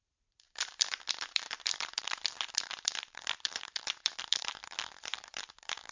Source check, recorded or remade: remade